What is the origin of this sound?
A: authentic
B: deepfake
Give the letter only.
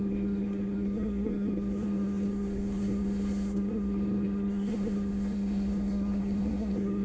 B